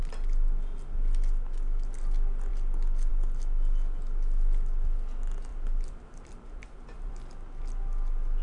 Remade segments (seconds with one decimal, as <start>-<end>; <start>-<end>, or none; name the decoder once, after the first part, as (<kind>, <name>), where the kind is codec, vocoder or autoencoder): 5.5-7.1 (vocoder, BigVGAN v2)